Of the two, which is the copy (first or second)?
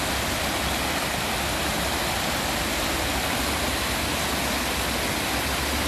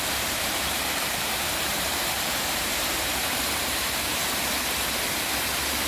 second